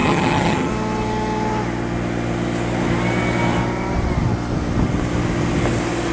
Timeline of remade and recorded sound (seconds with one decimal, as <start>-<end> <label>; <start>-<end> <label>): 0.0-0.7 remade; 0.7-6.1 recorded